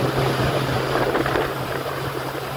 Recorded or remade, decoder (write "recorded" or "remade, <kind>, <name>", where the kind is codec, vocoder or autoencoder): remade, vocoder, BigVGAN v2